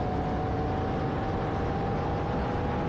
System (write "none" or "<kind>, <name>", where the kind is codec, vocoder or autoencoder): none